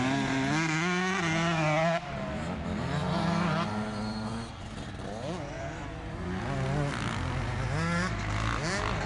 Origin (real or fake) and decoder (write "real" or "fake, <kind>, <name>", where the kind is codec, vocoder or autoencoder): real